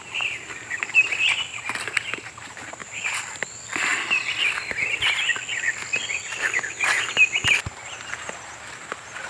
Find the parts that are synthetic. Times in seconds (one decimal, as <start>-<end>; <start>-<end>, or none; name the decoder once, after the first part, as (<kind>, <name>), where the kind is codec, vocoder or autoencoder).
0.0-3.9 (vocoder, BigVGAN v2); 6.4-9.3